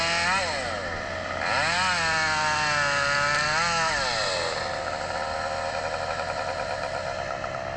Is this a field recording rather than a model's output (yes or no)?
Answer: yes